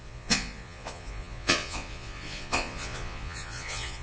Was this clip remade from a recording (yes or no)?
yes